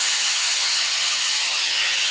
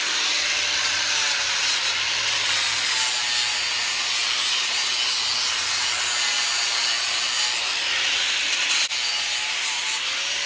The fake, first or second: first